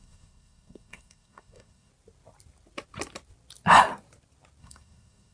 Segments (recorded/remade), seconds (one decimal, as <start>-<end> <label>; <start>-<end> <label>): 0.0-1.9 remade; 1.9-4.6 recorded; 4.6-5.3 remade